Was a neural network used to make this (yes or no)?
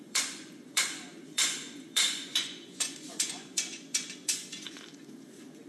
yes